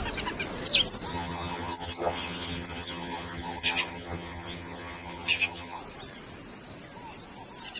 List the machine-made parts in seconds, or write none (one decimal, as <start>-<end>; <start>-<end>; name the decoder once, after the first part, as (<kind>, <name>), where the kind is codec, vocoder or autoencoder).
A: 1.1-5.8 (vocoder, HiFi-GAN)